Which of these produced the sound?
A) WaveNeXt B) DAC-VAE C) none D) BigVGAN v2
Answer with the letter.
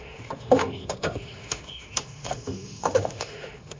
B